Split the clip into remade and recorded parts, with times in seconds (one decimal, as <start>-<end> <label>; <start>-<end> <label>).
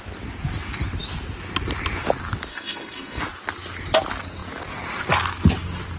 0.0-2.5 recorded; 2.5-3.2 remade; 3.2-6.0 recorded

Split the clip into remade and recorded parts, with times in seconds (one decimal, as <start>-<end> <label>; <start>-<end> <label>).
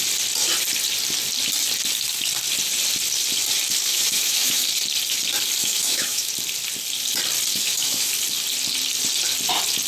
0.0-3.9 recorded; 3.9-4.7 remade; 4.7-5.6 recorded; 5.6-6.3 remade; 6.3-7.5 recorded; 7.5-8.1 remade; 8.1-9.9 recorded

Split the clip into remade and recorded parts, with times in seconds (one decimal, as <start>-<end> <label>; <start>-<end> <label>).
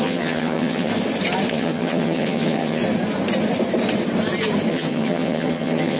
0.0-0.9 remade; 0.9-1.5 recorded; 1.5-2.8 remade; 2.8-4.7 recorded; 4.7-6.0 remade